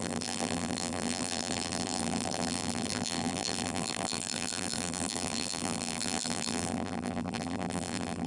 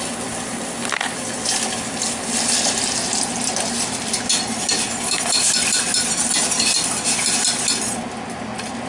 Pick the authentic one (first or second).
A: second